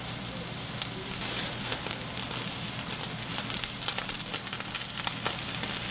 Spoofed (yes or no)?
no